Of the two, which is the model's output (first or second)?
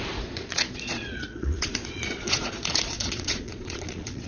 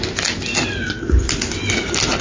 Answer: first